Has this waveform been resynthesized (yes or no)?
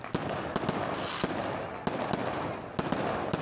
no